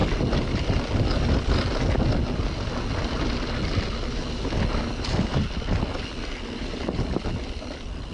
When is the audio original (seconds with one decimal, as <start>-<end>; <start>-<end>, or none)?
0.0-8.1